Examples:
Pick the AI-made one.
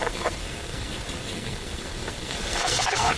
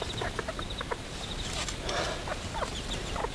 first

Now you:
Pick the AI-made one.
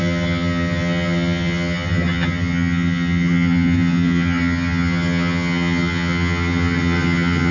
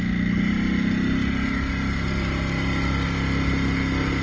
first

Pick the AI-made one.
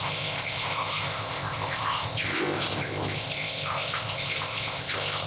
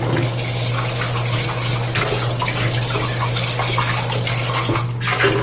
first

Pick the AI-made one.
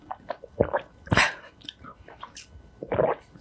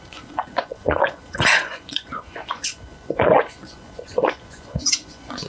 second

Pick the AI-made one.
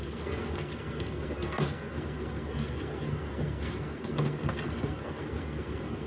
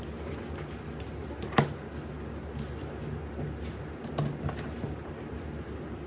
first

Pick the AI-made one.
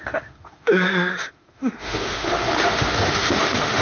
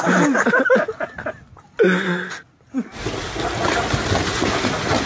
first